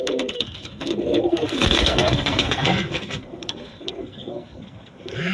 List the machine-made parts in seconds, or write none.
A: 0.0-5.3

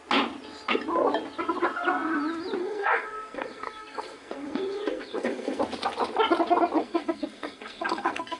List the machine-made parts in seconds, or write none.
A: 2.6-5.6; 6.8-8.4

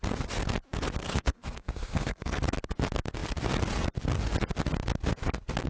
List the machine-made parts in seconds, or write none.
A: 1.0-2.4

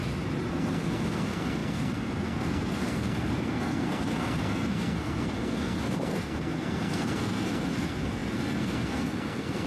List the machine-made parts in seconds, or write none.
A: 0.5-9.7